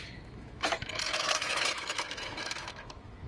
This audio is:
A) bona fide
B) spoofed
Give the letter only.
B